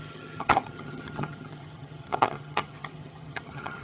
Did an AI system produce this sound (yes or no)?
yes